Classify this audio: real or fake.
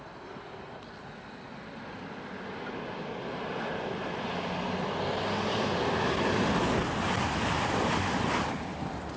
real